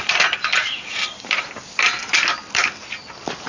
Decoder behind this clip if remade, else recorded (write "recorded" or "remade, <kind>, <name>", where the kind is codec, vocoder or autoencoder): remade, vocoder, BigVGAN v2